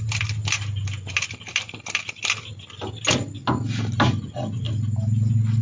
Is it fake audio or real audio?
real